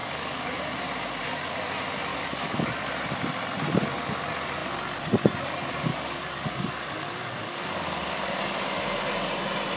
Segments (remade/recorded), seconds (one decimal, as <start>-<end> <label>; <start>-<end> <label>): 0.0-0.6 remade; 0.6-2.1 recorded; 2.1-2.9 remade; 2.9-5.9 recorded; 5.9-8.4 remade; 8.4-9.8 recorded